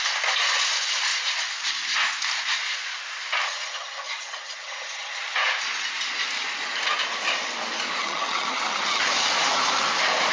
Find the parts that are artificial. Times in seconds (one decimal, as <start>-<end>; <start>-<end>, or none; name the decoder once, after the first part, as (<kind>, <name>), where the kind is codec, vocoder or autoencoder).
3.5-5.2 (vocoder, HiFi-GAN); 8.0-9.0